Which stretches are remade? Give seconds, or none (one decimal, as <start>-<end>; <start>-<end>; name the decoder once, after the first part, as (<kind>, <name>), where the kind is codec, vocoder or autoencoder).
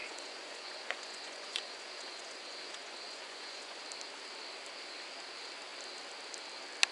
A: 0.0-3.8 (vocoder, Vocos)